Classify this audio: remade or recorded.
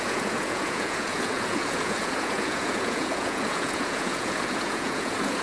remade